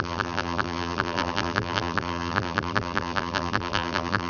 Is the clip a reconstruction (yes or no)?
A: yes